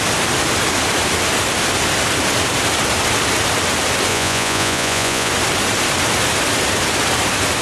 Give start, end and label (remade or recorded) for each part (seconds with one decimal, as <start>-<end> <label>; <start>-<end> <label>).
0.0-4.1 recorded; 4.1-5.3 remade; 5.3-7.6 recorded